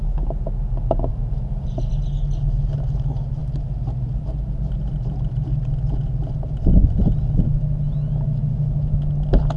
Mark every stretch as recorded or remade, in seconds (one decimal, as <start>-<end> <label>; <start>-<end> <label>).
0.0-1.1 recorded; 1.1-1.9 remade; 1.9-9.6 recorded